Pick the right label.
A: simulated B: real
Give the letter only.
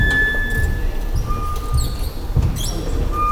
B